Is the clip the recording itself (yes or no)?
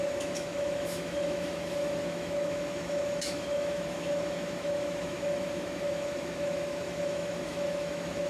no